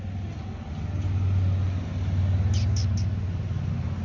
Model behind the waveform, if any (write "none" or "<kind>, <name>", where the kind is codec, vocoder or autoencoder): none